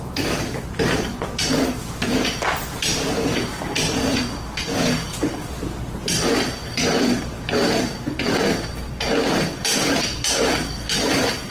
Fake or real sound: fake